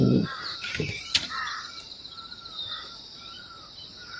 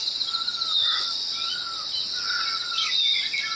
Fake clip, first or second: first